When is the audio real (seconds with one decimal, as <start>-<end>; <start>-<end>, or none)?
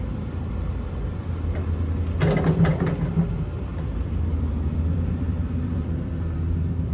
0.0-3.7